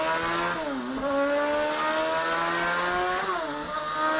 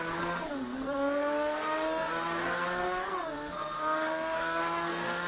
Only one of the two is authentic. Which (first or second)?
first